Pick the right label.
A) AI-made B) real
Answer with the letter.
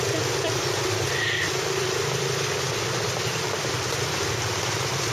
A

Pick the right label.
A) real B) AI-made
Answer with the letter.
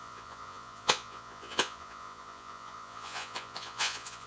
B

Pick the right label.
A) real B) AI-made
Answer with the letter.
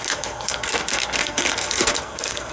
B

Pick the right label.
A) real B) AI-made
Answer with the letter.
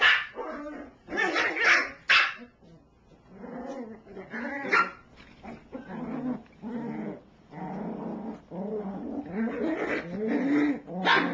A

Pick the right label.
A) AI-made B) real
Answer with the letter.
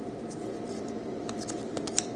B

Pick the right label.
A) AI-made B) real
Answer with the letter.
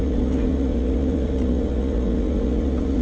A